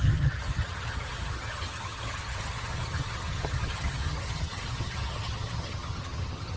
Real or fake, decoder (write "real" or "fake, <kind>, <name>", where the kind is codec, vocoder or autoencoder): fake, vocoder, HiFi-GAN